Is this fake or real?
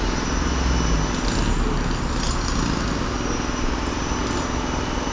real